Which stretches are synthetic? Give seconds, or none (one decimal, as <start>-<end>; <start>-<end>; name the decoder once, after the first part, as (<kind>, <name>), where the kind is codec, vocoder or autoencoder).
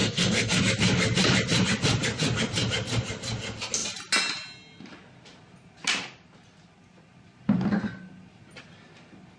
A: 0.0-0.6 (codec, SNAC)